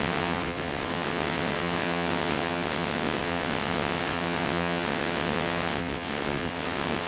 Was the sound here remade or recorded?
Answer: remade